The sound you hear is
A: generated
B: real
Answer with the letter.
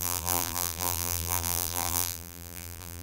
A